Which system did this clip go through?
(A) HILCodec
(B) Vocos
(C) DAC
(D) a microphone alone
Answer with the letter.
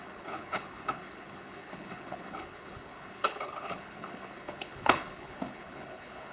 A